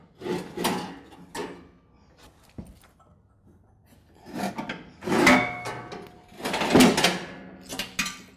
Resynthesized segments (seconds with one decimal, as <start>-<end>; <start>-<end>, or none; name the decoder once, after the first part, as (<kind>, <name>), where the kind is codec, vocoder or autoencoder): none